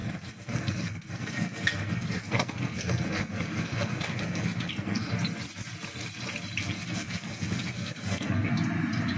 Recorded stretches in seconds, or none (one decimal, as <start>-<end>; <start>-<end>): 5.1-6.6; 8.5-9.2